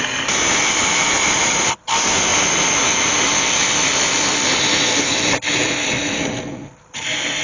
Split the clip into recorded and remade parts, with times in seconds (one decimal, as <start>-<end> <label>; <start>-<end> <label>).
0.0-7.4 recorded